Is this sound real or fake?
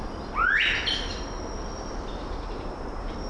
real